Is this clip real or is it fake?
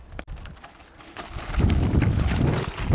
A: real